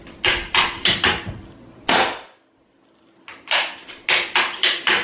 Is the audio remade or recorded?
recorded